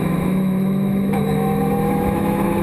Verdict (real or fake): fake